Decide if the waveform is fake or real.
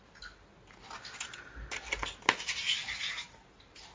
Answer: real